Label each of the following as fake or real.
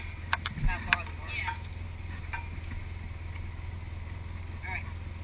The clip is real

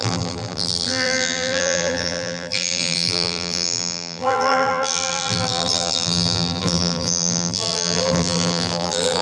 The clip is fake